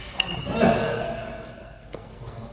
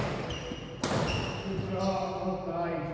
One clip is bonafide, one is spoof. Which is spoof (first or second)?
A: first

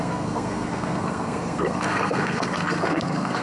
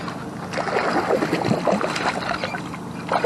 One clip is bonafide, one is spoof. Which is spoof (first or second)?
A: first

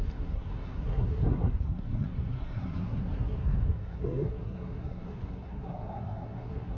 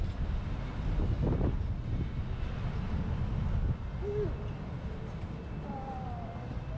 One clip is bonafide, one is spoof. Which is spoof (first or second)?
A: first